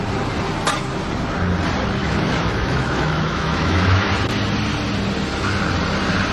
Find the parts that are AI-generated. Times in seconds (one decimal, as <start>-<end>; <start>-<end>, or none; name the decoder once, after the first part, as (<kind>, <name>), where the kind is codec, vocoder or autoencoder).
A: 2.0-4.1 (autoencoder, DAC-VAE)